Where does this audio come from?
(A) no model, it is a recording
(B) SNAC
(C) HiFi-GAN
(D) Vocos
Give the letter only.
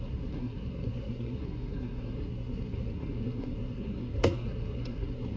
B